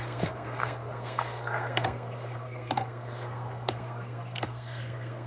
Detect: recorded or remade remade